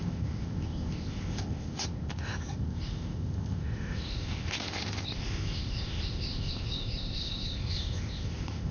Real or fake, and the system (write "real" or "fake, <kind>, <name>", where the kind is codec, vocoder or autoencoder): fake, codec, ZipCodec